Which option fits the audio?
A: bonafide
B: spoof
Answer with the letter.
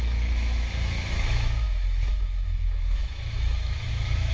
B